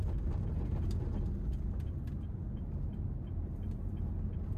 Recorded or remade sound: recorded